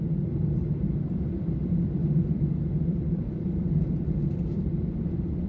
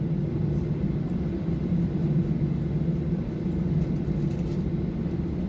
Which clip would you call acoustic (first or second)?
second